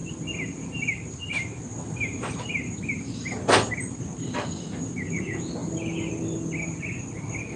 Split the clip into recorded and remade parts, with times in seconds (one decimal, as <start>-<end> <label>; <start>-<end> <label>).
0.0-7.6 recorded